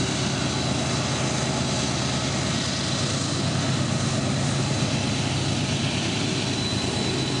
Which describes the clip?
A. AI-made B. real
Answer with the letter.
B